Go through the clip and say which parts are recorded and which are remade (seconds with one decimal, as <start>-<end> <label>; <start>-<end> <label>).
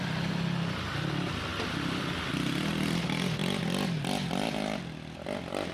0.0-5.7 recorded